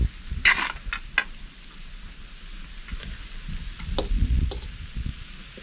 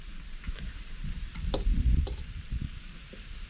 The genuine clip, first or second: first